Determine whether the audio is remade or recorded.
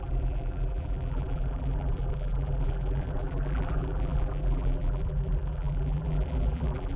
remade